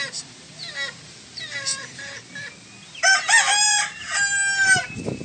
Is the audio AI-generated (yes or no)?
no